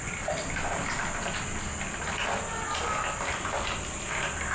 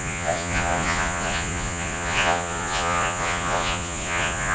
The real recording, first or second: first